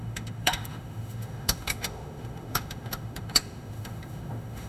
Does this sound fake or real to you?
fake